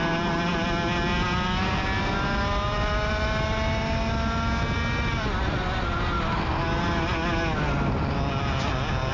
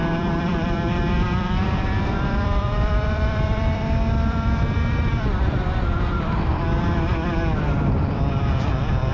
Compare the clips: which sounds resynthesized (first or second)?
second